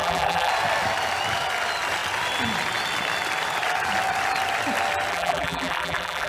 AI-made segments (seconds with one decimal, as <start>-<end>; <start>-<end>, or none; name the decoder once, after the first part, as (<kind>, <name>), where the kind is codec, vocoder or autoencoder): 0.0-0.5 (vocoder, BigVGAN v2); 5.1-6.3